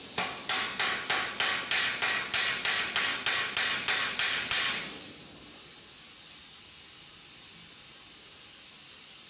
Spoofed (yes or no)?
no